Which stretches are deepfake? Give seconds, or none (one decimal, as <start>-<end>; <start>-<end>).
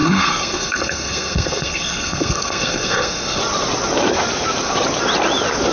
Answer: 0.0-3.4